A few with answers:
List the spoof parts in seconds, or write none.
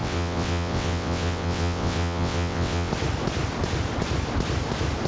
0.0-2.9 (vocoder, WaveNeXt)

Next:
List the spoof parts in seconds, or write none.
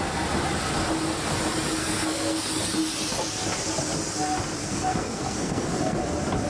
1.8-2.5 (codec, SNAC); 4.6-6.0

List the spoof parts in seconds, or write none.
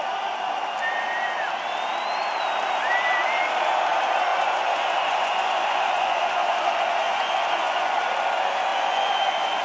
4.3-8.0 (vocoder, Vocos); 8.7-9.6